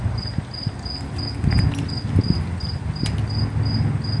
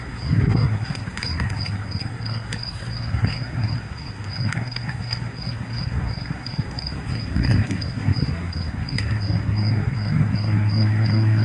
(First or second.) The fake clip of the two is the second